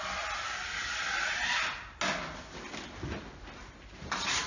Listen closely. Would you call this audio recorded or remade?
recorded